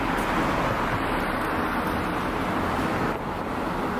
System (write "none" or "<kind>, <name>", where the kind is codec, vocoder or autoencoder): none